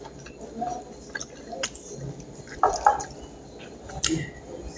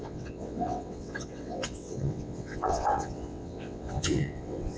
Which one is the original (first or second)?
first